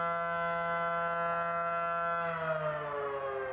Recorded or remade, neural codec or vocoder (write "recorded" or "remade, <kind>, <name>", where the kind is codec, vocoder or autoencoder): recorded